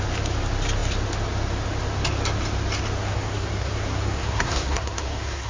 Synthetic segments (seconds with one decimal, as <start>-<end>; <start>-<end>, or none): 3.0-5.5